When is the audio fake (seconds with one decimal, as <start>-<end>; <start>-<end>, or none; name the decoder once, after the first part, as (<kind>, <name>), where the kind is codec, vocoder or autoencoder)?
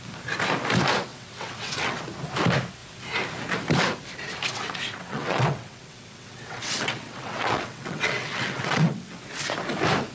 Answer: 1.1-2.0 (vocoder, WaveNeXt); 4.5-9.1